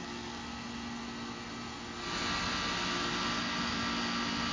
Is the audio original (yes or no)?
yes